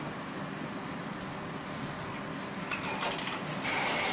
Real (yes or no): yes